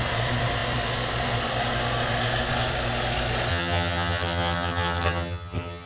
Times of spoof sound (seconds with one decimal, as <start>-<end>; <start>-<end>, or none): 3.5-5.9